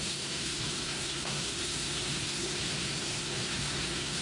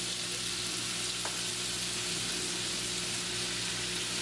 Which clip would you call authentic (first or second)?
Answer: second